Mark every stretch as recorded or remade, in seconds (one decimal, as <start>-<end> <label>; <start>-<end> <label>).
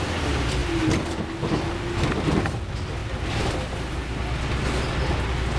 0.0-5.6 recorded